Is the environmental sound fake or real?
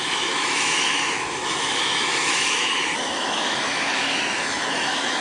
fake